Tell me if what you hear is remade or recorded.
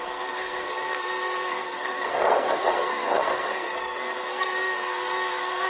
remade